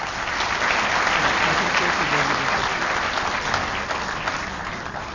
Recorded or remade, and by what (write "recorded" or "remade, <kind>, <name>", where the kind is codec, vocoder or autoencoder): recorded